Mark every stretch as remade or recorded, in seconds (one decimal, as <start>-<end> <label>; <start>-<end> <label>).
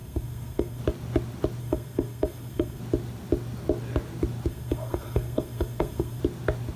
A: 0.0-0.8 remade; 0.8-1.6 recorded; 1.6-2.8 remade; 2.8-4.5 recorded; 4.5-6.2 remade; 6.2-6.8 recorded